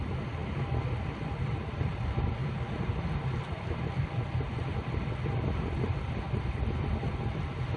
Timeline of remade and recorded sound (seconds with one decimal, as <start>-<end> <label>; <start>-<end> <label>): 0.0-7.8 recorded